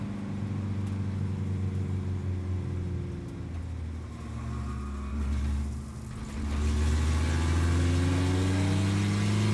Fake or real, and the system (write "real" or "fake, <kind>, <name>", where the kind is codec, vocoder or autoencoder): real